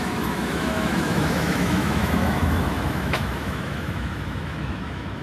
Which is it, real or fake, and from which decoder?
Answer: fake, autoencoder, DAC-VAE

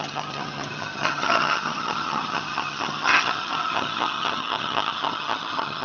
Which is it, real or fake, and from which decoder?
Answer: fake, vocoder, HiFi-GAN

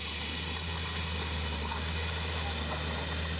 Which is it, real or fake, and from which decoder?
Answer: real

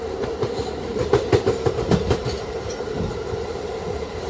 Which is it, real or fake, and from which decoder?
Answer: fake, vocoder, BigVGAN v2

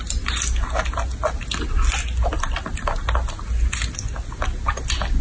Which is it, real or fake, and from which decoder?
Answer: real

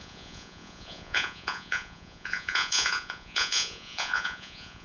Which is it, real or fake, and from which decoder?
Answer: fake, vocoder, Vocos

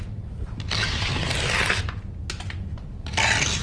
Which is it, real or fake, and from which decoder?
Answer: real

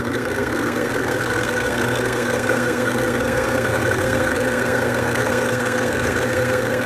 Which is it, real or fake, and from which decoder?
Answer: fake, codec, SNAC